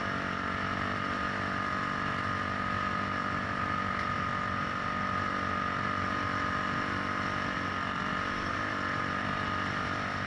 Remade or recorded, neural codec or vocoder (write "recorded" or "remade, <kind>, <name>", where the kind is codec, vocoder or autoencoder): recorded